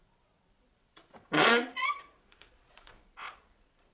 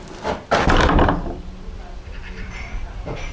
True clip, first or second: second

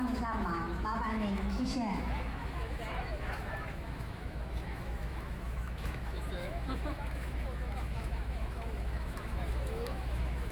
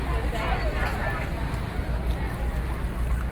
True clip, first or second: second